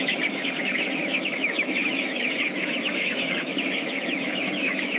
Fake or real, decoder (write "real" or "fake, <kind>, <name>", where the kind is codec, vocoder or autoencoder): fake, autoencoder, DAC-VAE